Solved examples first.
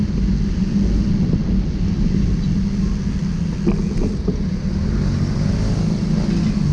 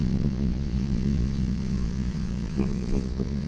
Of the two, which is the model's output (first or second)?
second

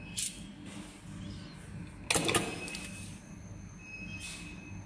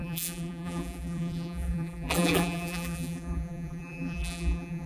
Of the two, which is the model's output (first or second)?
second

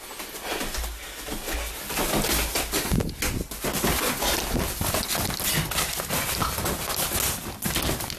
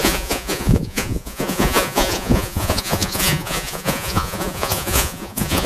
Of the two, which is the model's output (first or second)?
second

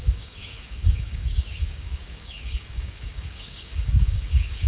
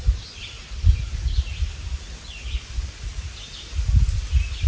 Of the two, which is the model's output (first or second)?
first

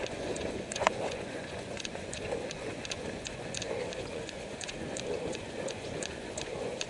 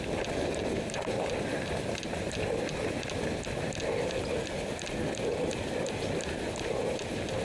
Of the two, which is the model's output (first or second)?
first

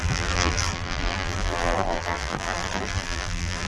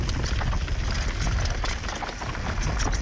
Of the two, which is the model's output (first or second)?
first